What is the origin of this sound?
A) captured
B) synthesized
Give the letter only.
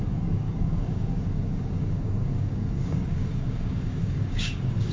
B